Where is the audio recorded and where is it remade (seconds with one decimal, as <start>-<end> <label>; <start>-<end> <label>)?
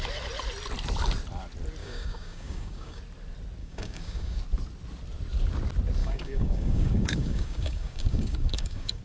0.0-1.8 recorded; 1.8-3.0 remade; 3.0-3.6 recorded; 3.6-4.4 remade; 4.4-6.0 recorded; 6.0-9.0 remade